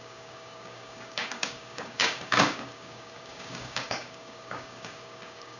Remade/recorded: remade